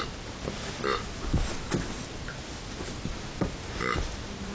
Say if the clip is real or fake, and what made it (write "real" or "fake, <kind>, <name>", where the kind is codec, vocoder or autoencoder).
real